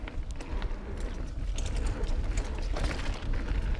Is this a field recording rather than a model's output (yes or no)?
yes